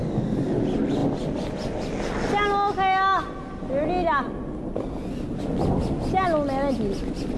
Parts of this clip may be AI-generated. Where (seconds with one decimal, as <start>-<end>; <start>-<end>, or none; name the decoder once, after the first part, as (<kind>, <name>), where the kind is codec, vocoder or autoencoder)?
none